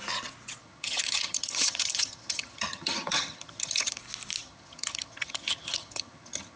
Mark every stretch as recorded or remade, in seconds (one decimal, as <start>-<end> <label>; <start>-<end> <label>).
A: 0.0-0.6 recorded; 0.6-4.0 remade; 4.0-4.4 recorded; 4.4-6.6 remade